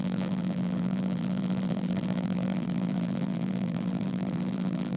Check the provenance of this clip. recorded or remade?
remade